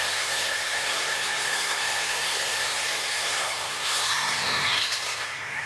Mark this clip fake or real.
fake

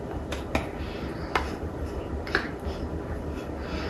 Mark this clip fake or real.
real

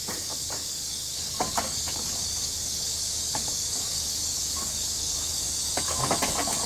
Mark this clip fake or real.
fake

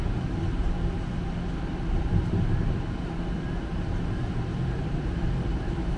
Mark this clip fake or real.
fake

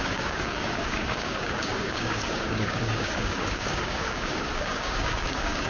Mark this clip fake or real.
fake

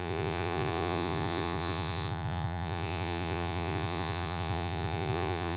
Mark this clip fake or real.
fake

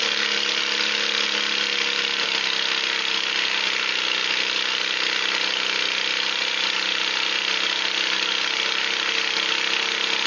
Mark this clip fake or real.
real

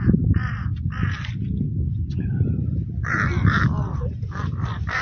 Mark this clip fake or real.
real